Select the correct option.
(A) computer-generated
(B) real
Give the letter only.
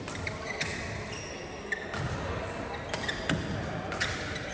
B